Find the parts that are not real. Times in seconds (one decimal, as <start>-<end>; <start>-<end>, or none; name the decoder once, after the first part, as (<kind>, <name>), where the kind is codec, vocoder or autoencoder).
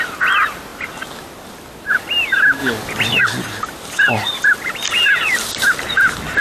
none